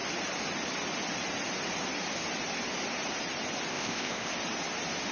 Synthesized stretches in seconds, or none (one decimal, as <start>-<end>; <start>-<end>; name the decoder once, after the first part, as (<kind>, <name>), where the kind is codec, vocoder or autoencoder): 3.7-4.3 (codec, ZipCodec)